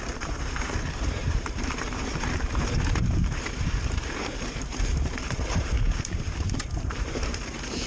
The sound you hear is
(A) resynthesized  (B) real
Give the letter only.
A